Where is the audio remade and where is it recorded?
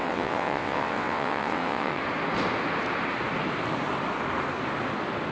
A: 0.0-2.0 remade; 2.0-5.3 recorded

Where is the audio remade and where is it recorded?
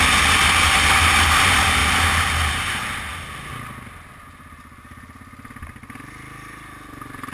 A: 0.0-7.3 recorded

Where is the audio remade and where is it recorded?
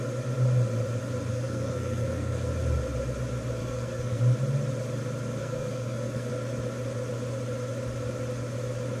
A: 0.0-1.3 recorded; 1.3-2.5 remade; 2.5-3.6 recorded; 3.6-4.2 remade; 4.2-5.4 recorded; 5.4-6.3 remade; 6.3-9.0 recorded